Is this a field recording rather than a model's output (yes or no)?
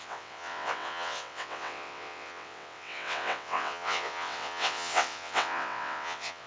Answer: no